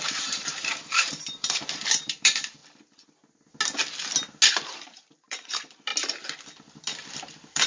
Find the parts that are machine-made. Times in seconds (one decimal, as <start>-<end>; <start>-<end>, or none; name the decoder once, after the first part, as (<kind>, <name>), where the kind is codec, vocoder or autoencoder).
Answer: 0.0-2.6 (vocoder, BigVGAN v2); 4.6-5.9; 7.3-7.7